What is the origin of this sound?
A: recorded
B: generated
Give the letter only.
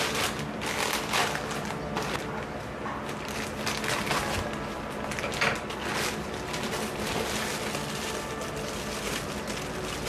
A